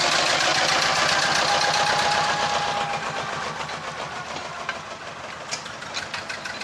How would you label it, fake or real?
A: real